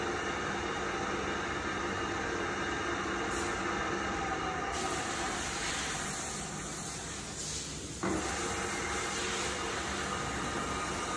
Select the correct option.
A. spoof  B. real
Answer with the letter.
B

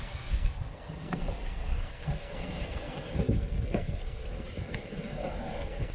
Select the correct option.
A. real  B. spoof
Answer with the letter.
B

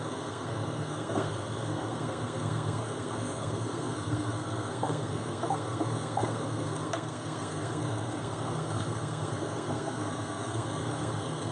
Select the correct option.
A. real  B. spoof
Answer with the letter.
B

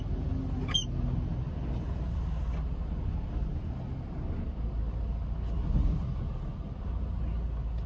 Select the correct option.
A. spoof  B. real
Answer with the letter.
B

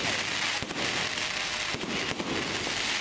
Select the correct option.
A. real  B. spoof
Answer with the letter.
A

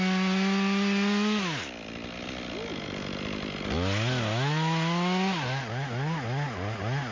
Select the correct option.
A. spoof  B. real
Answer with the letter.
B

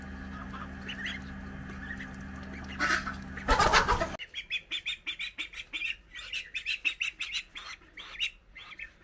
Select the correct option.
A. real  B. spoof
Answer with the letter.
A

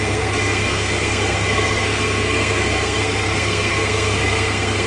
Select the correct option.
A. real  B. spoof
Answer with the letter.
B